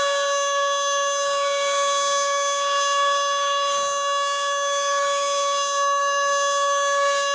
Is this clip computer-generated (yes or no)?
yes